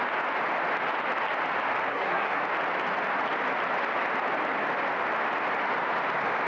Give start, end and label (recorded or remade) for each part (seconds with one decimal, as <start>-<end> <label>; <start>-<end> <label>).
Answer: 0.0-1.9 recorded; 1.9-2.4 remade; 2.4-6.5 recorded